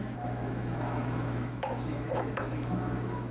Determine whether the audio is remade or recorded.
remade